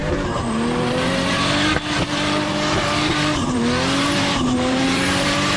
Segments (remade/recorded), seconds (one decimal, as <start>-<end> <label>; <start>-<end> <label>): 0.0-0.9 recorded; 0.9-2.5 remade; 2.5-4.0 recorded; 4.0-5.6 remade